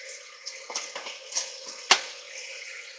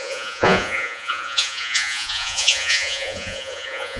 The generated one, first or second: second